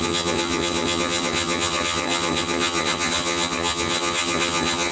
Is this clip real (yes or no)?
no